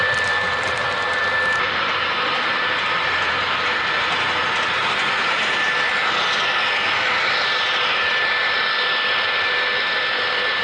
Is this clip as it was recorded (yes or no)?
yes